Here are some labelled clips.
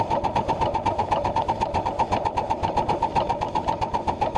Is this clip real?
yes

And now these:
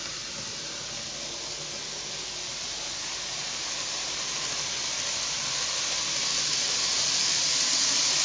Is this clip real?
yes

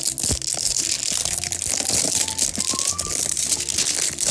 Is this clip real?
yes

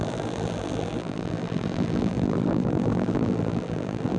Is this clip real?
no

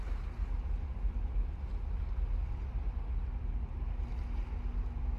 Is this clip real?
yes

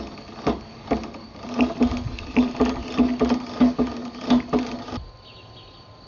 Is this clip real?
yes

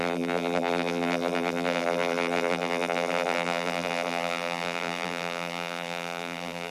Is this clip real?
no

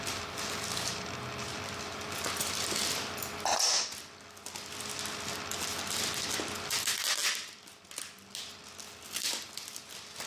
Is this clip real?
yes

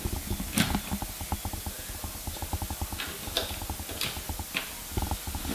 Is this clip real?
yes